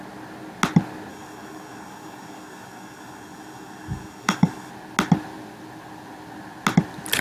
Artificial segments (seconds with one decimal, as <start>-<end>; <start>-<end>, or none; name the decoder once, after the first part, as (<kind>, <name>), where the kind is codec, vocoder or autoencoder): 1.1-4.7 (codec, DAC)